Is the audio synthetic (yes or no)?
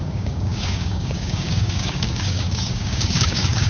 yes